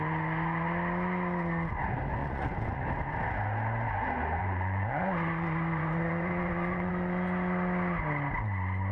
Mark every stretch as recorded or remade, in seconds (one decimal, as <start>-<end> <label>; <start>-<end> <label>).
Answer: 0.0-2.2 recorded; 2.2-2.8 remade; 2.8-4.4 recorded; 4.4-6.9 remade; 6.9-8.9 recorded